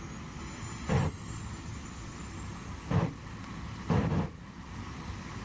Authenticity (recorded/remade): recorded